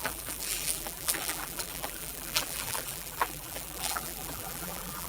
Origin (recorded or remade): remade